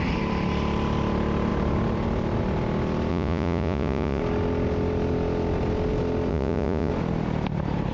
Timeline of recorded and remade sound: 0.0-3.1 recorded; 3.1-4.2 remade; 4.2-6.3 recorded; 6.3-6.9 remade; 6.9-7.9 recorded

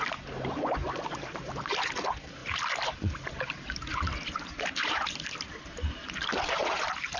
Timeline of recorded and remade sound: 0.0-7.2 recorded

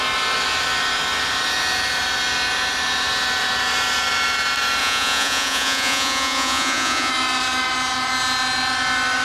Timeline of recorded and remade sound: 0.0-4.8 recorded; 4.8-7.1 remade; 7.1-9.2 recorded

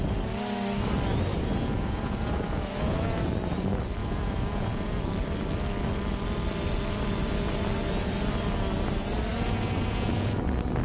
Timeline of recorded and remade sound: 0.0-1.3 recorded; 1.3-3.3 remade; 3.3-4.0 recorded; 4.0-5.0 remade; 5.0-9.3 recorded; 9.3-10.4 remade; 10.4-10.8 recorded

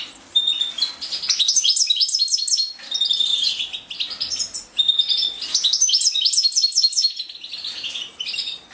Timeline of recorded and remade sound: 0.0-8.7 recorded

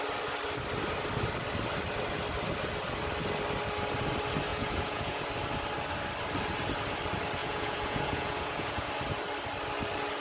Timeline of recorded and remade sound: 0.0-4.5 recorded; 4.5-5.3 remade; 5.3-7.4 recorded; 7.4-8.9 remade; 8.9-10.2 recorded